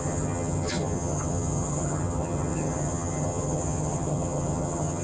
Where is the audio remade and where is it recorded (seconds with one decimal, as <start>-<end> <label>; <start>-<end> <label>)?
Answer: 0.0-5.0 remade